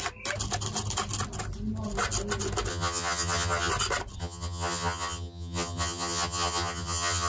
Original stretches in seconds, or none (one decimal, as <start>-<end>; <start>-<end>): 0.0-2.7; 3.7-4.2